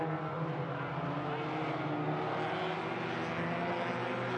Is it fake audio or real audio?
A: real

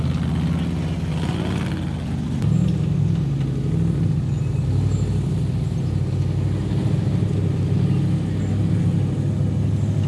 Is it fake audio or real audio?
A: real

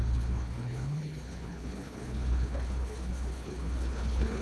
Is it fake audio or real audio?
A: fake